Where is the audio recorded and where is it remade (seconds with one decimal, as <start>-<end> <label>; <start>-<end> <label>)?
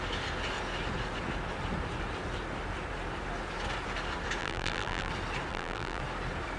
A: 0.0-4.4 recorded; 4.4-5.1 remade; 5.1-5.5 recorded; 5.5-6.0 remade; 6.0-6.6 recorded